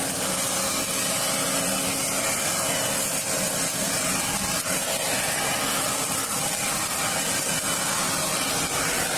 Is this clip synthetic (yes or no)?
no